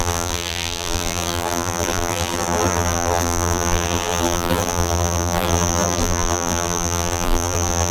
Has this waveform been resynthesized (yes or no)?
yes